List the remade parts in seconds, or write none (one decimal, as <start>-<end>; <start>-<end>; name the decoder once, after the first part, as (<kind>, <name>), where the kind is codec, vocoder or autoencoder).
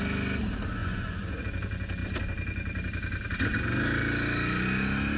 0.8-1.4 (vocoder, Vocos)